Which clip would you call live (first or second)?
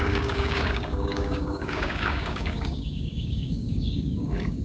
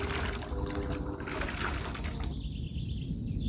second